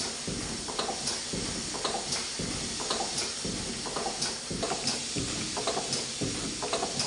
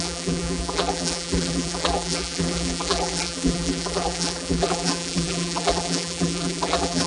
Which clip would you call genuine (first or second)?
first